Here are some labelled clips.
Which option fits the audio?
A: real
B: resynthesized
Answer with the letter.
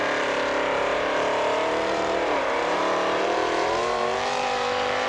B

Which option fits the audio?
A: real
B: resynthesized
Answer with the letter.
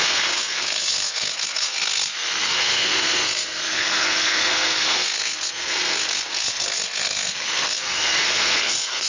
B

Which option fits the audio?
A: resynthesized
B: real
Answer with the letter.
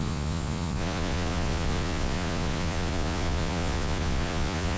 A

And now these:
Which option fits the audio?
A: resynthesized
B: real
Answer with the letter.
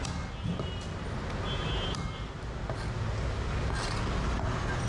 B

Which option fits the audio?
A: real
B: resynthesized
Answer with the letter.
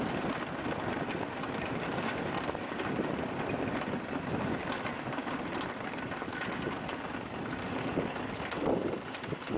A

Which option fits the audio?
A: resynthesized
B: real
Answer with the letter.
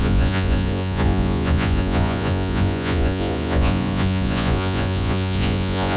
A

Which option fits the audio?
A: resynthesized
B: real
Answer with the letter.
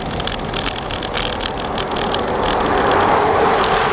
B